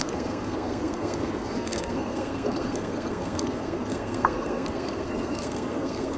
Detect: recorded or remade remade